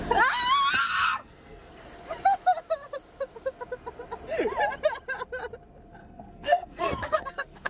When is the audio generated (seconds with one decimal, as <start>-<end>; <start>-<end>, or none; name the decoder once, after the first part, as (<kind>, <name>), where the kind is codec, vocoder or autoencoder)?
0.8-1.8 (codec, SNAC); 6.0-7.7